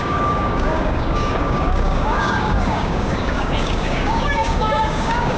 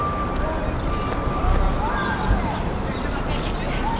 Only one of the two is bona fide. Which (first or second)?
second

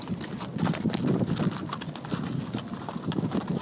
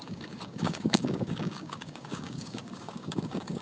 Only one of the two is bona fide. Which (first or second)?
first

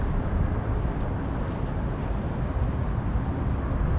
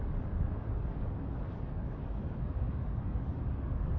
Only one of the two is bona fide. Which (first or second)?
first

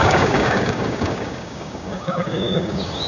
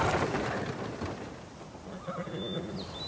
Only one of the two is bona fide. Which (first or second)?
second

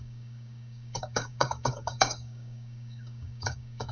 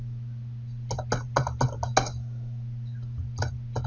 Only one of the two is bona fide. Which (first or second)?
second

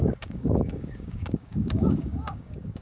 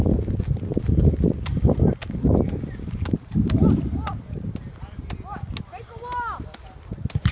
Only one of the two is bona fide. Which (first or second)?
second